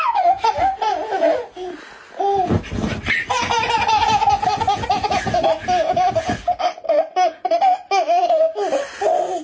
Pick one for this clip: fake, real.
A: real